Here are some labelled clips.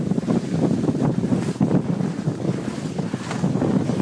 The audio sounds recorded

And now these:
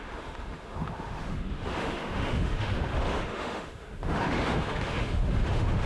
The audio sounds remade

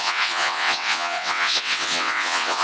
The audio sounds remade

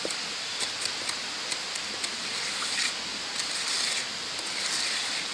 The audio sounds recorded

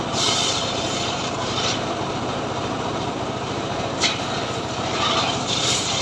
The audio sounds remade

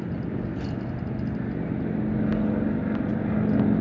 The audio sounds recorded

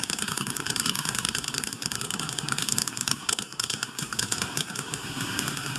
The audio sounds remade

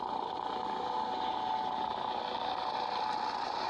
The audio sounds recorded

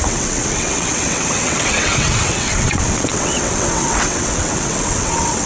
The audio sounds remade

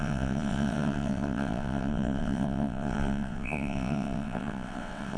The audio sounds remade